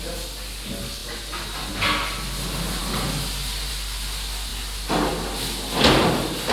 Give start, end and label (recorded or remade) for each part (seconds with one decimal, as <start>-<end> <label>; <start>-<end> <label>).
0.0-6.5 recorded